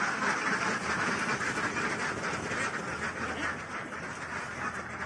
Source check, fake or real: real